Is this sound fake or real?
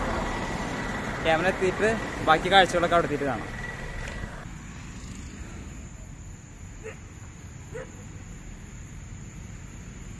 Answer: real